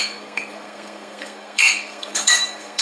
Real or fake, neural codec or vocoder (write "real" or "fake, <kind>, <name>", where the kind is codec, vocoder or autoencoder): fake, codec, SNAC